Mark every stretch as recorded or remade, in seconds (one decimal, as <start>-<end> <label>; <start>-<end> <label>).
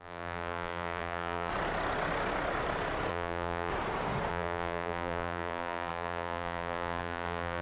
0.0-1.5 remade; 1.5-3.1 recorded; 3.1-3.7 remade; 3.7-4.3 recorded; 4.3-7.6 remade